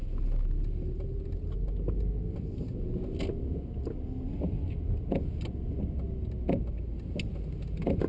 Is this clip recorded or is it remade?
recorded